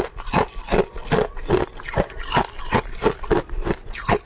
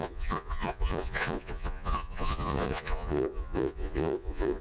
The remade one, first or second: second